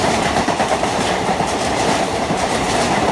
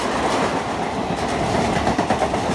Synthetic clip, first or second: first